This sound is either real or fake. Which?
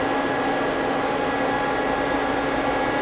real